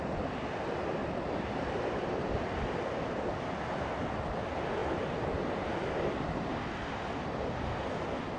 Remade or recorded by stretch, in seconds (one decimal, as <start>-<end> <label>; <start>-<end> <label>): 0.0-1.0 recorded; 1.0-2.8 remade; 2.8-4.8 recorded; 4.8-5.3 remade; 5.3-8.4 recorded